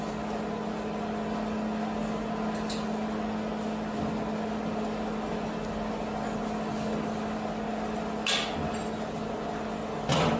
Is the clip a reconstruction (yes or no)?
no